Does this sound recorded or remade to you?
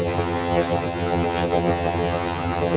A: remade